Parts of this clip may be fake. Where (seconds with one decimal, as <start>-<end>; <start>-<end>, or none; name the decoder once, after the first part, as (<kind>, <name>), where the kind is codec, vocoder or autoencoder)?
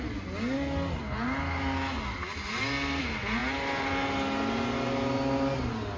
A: none